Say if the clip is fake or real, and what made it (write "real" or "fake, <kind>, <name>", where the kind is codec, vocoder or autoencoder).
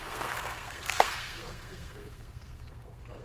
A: fake, codec, SNAC